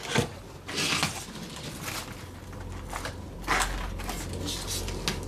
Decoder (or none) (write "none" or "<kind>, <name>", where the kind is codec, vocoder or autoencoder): none